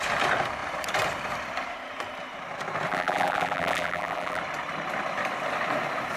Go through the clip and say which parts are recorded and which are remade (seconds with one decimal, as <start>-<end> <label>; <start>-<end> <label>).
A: 0.0-2.9 recorded; 2.9-4.4 remade; 4.4-6.2 recorded